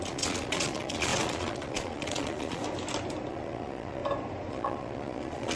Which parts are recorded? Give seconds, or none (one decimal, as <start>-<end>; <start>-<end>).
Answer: 2.6-3.3; 4.0-4.5